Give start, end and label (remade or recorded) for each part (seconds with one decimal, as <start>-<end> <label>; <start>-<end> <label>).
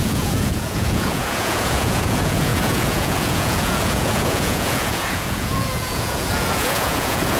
0.0-7.4 remade